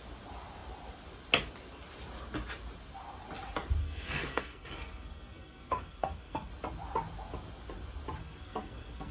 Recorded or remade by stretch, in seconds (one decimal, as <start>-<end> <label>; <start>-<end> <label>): 0.0-3.8 recorded; 3.8-6.5 remade; 6.5-8.2 recorded; 8.2-9.1 remade